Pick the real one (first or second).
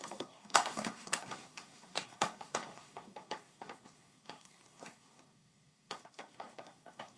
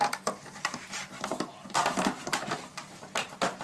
second